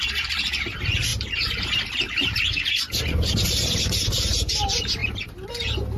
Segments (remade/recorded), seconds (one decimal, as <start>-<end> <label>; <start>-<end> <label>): 0.0-6.0 remade